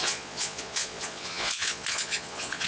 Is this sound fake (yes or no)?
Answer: yes